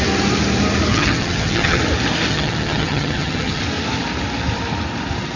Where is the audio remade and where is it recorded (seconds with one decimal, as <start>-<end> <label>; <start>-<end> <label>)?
0.0-0.9 recorded; 0.9-1.8 remade; 1.8-2.3 recorded; 2.3-3.6 remade; 3.6-5.4 recorded